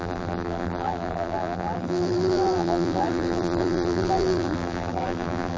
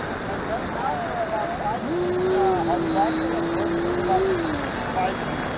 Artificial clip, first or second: first